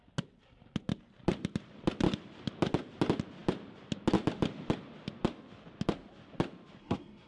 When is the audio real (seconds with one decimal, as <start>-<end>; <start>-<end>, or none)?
0.0-6.8